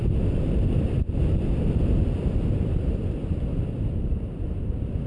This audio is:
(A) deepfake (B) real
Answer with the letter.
B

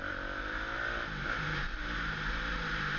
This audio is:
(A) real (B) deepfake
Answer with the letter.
A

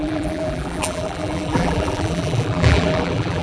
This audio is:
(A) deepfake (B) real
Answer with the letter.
A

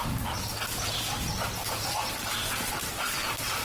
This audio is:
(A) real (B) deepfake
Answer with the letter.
B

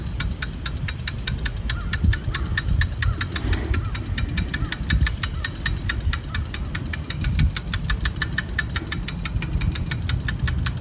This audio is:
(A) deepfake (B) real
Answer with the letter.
B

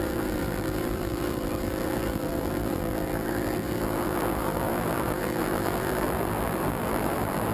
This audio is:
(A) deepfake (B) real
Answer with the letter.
A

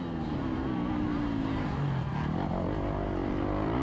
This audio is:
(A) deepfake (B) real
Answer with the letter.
B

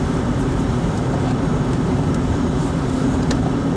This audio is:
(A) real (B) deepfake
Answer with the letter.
B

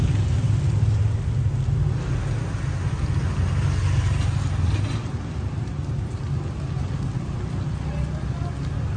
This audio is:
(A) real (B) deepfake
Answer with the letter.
A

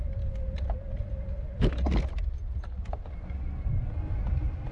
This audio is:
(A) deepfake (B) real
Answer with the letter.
B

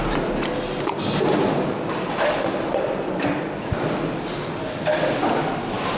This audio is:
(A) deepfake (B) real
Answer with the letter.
B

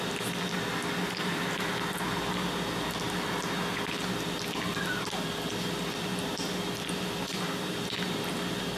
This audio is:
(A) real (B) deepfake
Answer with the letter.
A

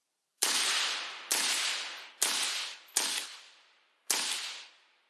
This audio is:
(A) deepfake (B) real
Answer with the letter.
A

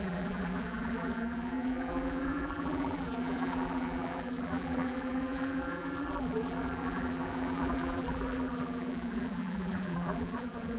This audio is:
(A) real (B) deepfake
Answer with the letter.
B